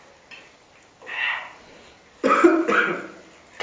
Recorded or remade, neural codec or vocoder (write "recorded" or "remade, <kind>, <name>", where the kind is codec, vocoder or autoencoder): recorded